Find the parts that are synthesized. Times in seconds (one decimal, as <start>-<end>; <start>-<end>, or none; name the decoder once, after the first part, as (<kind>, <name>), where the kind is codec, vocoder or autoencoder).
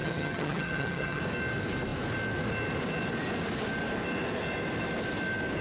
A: 0.0-1.2 (vocoder, HiFi-GAN)